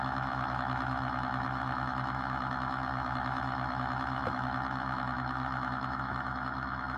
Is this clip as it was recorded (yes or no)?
no